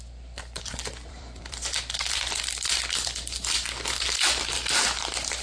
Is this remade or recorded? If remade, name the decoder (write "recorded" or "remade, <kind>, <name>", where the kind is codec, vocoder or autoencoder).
remade, vocoder, BigVGAN v2